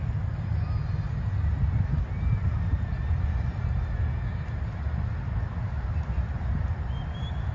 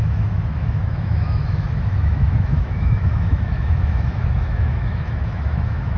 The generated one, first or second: second